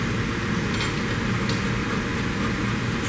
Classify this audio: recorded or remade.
recorded